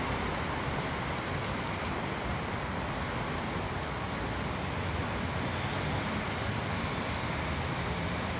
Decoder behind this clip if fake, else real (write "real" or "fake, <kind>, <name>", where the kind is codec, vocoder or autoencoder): real